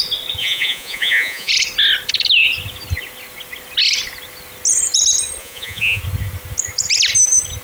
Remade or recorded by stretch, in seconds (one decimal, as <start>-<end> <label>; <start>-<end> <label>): 0.0-0.4 recorded; 0.4-1.5 remade; 1.5-5.4 recorded; 5.4-6.0 remade; 6.0-7.6 recorded